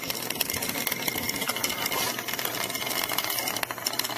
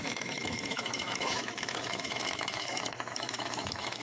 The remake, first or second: second